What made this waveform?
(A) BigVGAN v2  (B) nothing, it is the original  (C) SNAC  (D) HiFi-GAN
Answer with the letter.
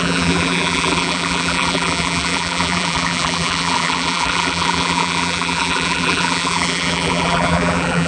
A